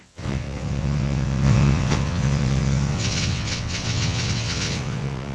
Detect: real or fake fake